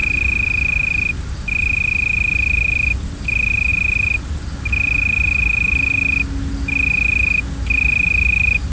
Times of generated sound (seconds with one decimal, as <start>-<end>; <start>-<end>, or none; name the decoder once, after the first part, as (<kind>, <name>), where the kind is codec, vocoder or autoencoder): none